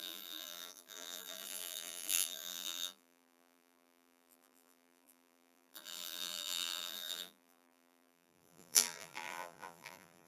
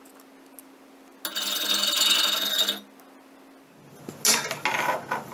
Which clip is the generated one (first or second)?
first